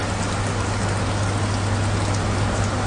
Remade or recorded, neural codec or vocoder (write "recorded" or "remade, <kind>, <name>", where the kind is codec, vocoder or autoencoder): recorded